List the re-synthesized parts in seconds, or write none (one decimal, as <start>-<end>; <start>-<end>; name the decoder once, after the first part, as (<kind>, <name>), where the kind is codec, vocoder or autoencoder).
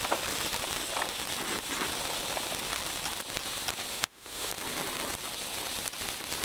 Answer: 3.9-4.5 (autoencoder, DAC-VAE)